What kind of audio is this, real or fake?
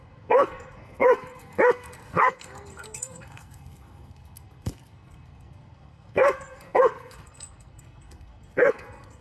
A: fake